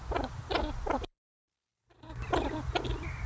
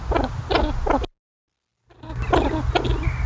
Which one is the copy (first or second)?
first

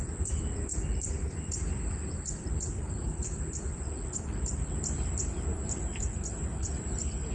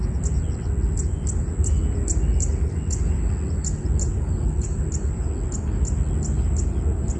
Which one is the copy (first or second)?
first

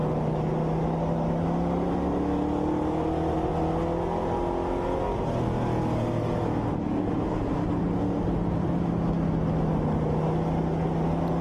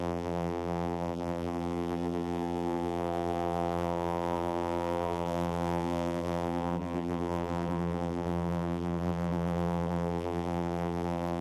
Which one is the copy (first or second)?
second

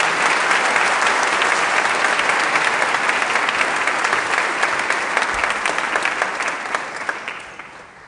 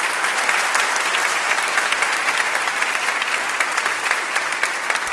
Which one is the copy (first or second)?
second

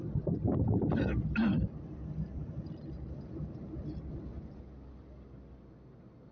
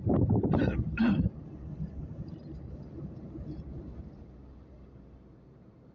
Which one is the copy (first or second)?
second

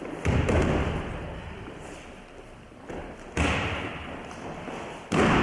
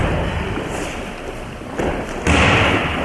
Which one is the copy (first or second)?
second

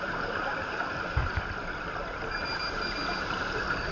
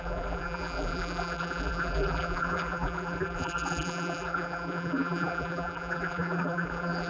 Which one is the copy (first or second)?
second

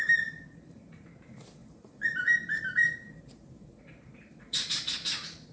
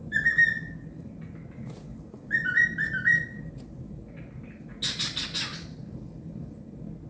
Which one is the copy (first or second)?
first